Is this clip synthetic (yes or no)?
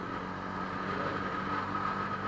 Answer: no